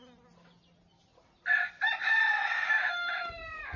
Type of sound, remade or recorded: recorded